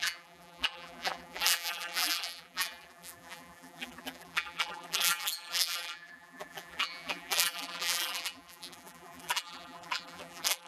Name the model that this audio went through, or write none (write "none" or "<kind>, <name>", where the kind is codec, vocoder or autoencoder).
vocoder, BigVGAN v2